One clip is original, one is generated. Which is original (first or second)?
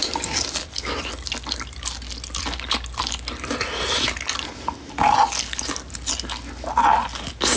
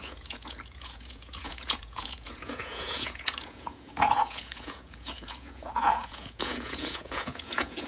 first